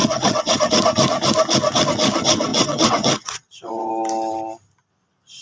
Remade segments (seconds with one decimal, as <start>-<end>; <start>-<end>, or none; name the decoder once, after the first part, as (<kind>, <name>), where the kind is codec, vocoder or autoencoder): 0.0-0.7 (vocoder, WaveNeXt); 2.5-3.9